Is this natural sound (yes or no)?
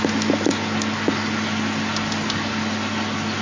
yes